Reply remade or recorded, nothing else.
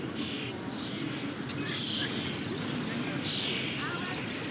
recorded